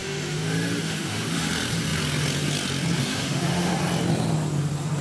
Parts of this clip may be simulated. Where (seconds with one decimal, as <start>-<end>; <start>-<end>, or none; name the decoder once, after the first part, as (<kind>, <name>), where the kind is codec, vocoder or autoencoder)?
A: 0.0-1.5 (autoencoder, DAC-VAE); 3.0-3.8